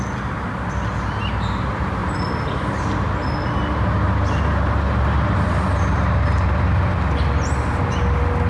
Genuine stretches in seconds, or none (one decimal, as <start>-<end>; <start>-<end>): 0.0-8.5